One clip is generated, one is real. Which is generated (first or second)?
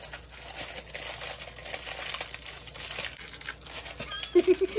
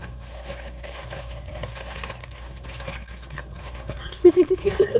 second